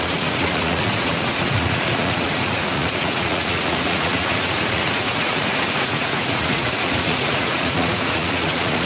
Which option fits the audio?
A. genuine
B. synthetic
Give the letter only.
B